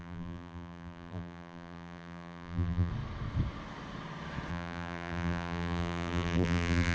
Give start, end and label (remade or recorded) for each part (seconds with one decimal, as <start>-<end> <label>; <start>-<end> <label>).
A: 0.0-2.9 remade; 2.9-4.5 recorded; 4.5-6.9 remade